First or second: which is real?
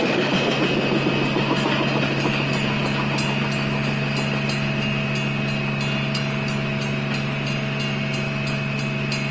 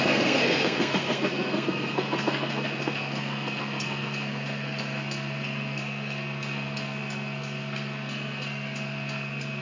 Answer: first